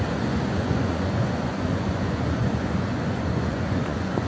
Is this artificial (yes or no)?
yes